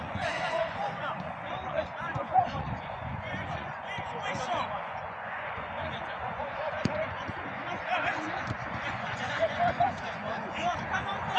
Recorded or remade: remade